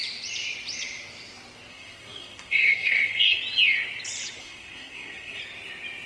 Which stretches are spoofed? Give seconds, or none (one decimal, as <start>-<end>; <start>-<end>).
1.7-3.4; 4.4-5.4